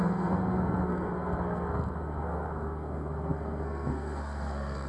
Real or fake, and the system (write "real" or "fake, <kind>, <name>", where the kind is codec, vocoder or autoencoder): fake, codec, SNAC